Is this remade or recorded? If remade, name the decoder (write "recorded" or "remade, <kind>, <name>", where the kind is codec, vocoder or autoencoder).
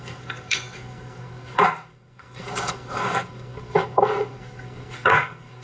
remade, codec, SNAC